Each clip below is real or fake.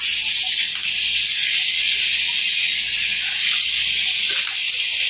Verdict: real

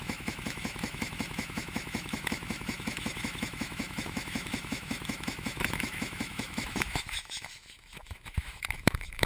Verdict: fake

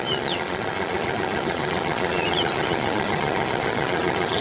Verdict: fake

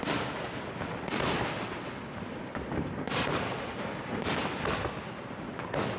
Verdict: real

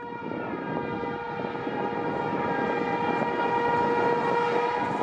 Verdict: real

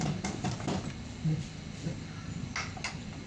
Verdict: real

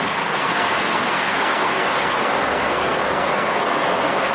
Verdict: fake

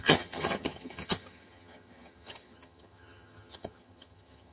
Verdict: fake